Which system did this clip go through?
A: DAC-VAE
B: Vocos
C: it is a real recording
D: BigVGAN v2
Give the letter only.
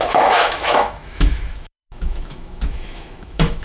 A